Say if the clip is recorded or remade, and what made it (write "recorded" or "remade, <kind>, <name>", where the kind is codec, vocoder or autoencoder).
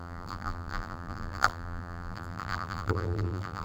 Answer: remade, vocoder, BigVGAN v2